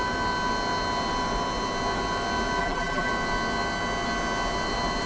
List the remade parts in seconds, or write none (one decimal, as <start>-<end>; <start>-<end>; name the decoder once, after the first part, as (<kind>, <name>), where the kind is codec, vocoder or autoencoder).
2.6-3.1 (vocoder, BigVGAN v2)